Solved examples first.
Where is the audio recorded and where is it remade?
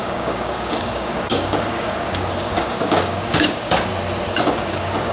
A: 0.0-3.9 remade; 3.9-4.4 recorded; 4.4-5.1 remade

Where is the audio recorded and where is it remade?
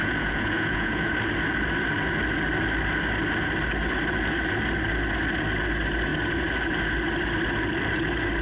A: 0.0-1.1 remade; 1.1-8.4 recorded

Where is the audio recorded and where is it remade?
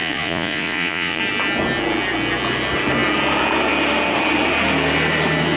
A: 0.0-1.2 remade; 1.2-5.6 recorded